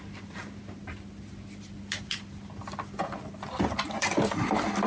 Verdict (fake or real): real